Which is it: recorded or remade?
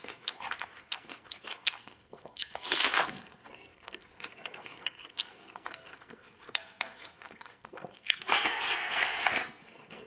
remade